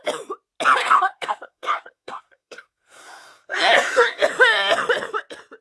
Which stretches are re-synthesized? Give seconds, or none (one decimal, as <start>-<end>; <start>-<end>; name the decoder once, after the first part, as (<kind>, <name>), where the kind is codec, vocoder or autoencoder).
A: 0.8-4.2 (codec, SNAC)